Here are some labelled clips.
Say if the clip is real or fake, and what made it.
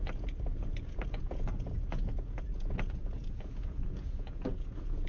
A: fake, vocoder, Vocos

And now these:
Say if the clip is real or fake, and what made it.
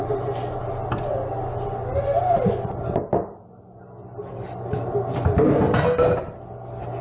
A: real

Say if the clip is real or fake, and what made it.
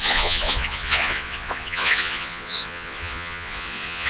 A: fake, vocoder, Vocos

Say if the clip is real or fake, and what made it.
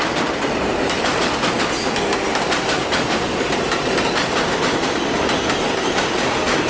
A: real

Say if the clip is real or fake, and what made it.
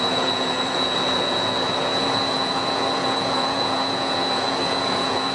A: fake, vocoder, Vocos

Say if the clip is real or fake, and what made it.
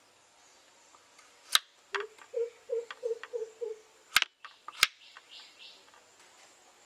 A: real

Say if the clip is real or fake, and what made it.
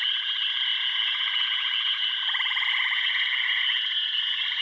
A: fake, vocoder, Vocos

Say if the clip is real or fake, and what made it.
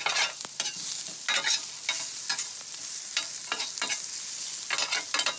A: real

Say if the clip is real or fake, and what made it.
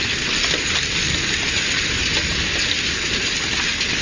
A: real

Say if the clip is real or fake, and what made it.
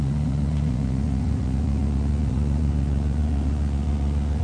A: fake, vocoder, Vocos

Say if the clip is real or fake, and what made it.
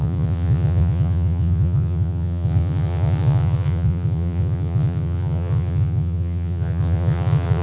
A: fake, vocoder, Vocos